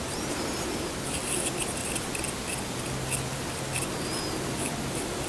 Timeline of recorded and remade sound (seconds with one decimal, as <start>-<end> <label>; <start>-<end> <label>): 0.0-5.3 recorded